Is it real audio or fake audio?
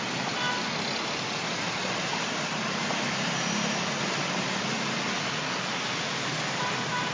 real